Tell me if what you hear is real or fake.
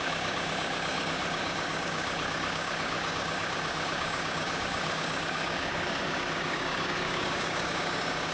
fake